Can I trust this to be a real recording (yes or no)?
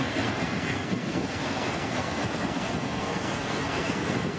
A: no